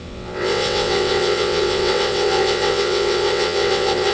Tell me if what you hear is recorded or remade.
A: remade